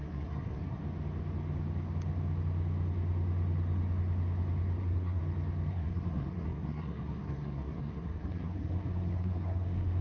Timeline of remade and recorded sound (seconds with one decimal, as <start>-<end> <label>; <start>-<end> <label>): 0.0-0.8 remade; 0.8-4.8 recorded; 4.8-5.2 remade; 5.2-5.7 recorded; 5.7-10.0 remade